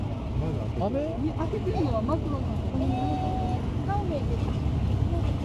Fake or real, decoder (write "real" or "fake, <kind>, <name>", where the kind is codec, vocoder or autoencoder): real